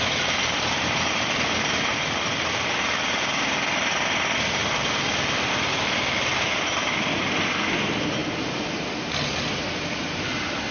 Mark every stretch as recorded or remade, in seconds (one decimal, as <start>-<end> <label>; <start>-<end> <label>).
0.0-10.7 recorded